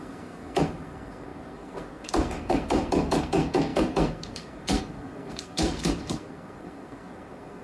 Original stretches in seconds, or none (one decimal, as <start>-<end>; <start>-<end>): none